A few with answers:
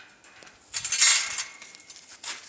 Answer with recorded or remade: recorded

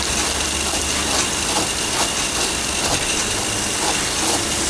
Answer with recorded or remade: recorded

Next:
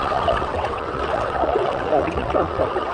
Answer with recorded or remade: remade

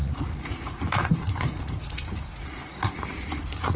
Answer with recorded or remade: remade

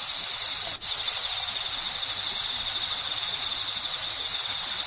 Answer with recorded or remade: recorded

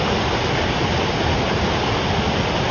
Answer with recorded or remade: recorded